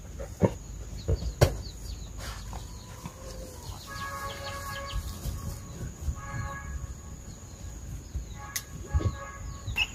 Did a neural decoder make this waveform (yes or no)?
no